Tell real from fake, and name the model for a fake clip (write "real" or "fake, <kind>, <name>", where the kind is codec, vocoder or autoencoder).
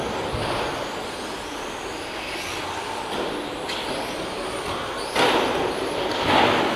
real